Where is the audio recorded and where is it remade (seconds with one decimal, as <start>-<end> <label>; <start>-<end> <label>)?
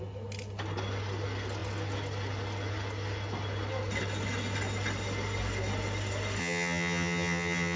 0.0-6.4 recorded; 6.4-7.8 remade